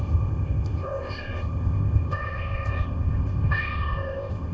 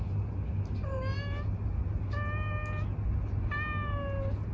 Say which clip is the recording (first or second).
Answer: second